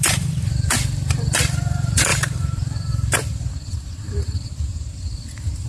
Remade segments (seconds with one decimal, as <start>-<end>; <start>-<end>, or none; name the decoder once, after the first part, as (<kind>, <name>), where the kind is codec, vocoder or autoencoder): 0.0-5.7 (vocoder, BigVGAN v2)